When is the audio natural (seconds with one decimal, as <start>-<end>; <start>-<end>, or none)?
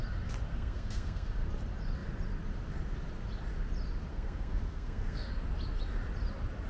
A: 0.0-0.5; 1.5-4.1; 5.3-6.7